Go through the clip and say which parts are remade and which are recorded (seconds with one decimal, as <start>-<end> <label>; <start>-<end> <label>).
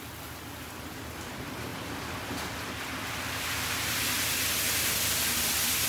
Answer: 0.0-5.9 recorded